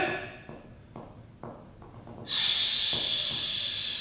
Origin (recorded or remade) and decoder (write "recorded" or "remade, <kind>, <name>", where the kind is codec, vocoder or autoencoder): recorded